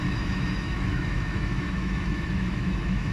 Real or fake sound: fake